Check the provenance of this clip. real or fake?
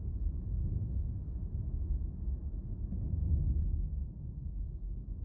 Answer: fake